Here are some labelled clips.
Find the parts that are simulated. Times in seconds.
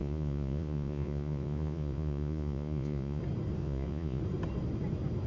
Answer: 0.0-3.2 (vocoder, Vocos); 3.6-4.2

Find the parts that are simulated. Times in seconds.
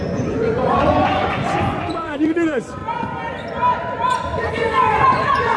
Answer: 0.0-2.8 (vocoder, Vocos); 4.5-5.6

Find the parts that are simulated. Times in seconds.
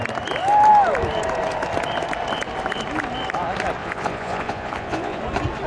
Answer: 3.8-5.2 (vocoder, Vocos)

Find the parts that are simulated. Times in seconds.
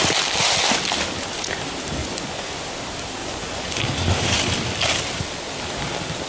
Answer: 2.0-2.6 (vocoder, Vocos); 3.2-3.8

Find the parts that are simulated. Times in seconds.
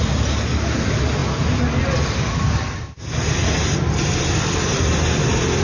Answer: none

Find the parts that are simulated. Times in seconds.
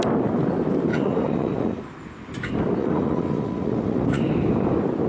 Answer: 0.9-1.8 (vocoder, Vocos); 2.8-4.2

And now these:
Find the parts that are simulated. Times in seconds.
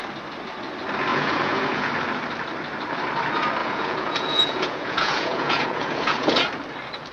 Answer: 1.1-1.9 (vocoder, Vocos); 3.6-6.5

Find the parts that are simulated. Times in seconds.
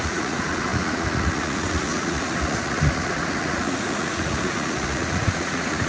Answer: 0.0-5.9 (vocoder, Vocos)